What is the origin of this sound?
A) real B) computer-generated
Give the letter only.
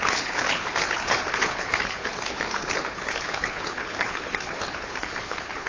B